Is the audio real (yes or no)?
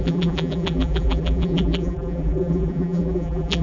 no